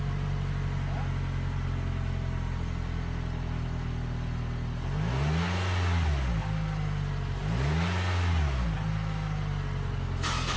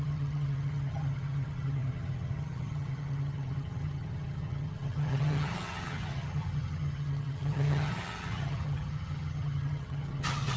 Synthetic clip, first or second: second